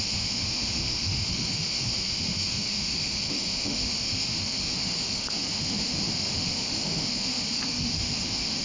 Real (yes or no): no